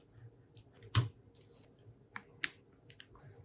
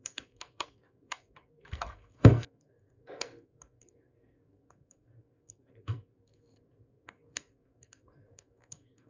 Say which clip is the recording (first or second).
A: first